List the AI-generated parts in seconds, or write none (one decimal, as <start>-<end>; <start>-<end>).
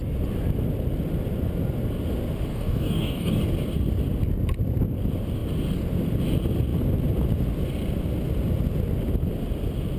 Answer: 2.5-3.4